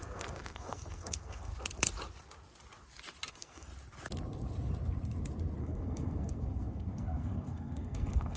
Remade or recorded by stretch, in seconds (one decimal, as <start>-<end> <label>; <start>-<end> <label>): 0.0-1.5 remade; 1.5-3.3 recorded; 3.3-3.7 remade; 3.7-5.6 recorded; 5.6-8.4 remade